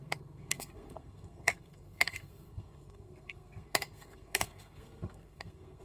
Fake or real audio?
fake